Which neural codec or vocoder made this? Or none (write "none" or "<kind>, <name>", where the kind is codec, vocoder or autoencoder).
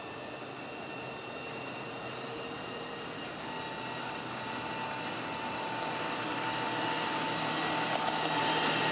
none